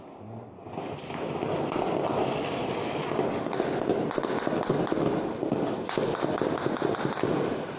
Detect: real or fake real